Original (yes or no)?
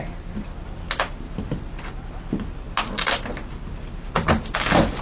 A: yes